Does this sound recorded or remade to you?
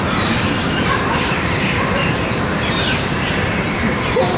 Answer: remade